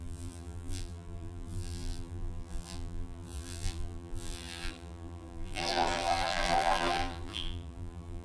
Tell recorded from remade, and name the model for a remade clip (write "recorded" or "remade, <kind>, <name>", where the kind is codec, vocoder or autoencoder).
remade, vocoder, BigVGAN v2